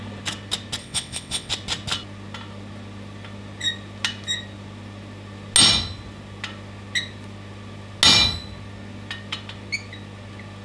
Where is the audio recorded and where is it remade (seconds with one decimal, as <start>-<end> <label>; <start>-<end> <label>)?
0.0-0.8 recorded; 0.8-1.5 remade; 1.5-10.6 recorded